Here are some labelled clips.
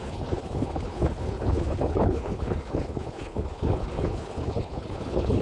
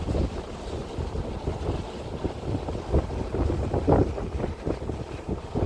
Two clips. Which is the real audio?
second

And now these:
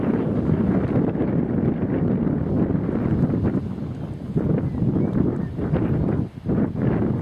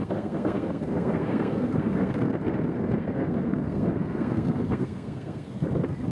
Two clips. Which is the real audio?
first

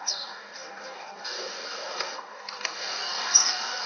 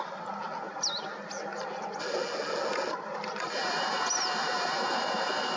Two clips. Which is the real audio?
second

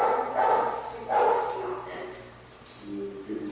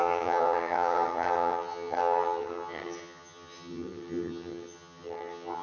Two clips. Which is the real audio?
first